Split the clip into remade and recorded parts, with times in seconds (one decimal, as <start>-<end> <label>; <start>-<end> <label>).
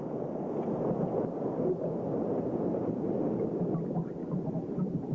0.0-2.8 recorded; 2.8-3.6 remade; 3.6-4.2 recorded; 4.2-5.1 remade